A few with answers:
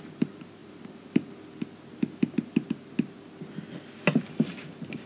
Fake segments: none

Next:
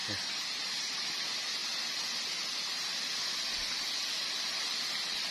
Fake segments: 0.0-1.1 (vocoder, BigVGAN v2)

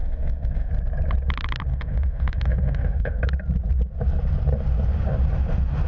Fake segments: 0.0-0.7 (autoencoder, DAC-VAE); 1.7-3.2

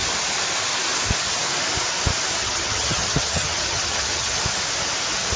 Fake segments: 2.4-4.4 (vocoder, HiFi-GAN)

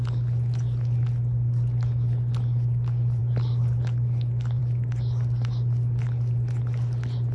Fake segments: none

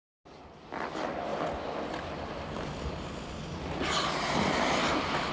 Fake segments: none

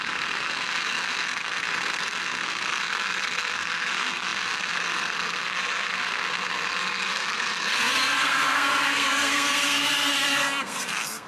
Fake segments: 0.0-11.3 (codec, SNAC)

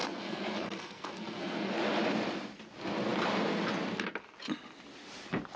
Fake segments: 0.0-1.7 (codec, SNAC)